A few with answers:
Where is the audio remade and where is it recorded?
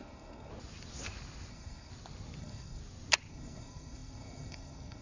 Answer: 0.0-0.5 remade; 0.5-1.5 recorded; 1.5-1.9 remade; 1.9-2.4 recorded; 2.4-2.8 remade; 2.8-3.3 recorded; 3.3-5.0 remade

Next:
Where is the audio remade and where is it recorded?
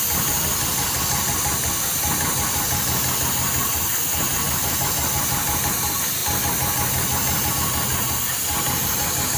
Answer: 0.0-9.4 recorded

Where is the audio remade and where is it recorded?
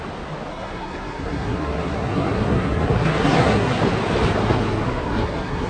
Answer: 0.0-0.5 recorded; 0.5-3.8 remade; 3.8-4.4 recorded; 4.4-5.7 remade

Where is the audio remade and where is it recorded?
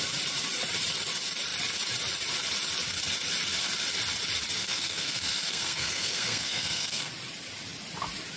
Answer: 0.0-4.6 recorded; 4.6-7.1 remade; 7.1-8.4 recorded